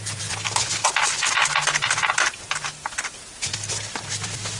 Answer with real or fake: real